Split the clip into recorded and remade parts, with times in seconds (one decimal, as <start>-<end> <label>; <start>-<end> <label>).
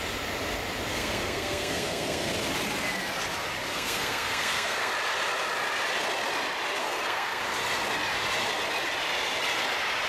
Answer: 0.0-0.9 recorded; 0.9-2.3 remade; 2.3-3.7 recorded; 3.7-4.9 remade; 4.9-6.8 recorded; 6.8-7.4 remade; 7.4-10.1 recorded